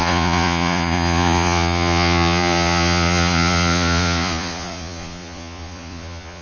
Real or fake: fake